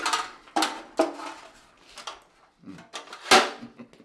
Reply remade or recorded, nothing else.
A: recorded